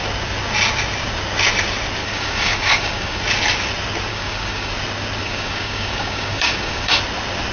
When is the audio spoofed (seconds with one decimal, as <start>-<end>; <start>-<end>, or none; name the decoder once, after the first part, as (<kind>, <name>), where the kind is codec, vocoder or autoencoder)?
2.0-3.2 (codec, DAC); 4.1-4.7; 5.2-7.0